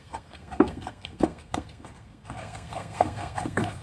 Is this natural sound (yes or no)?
no